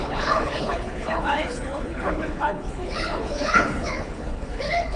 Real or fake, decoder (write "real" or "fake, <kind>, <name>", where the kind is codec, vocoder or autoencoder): fake, codec, HILCodec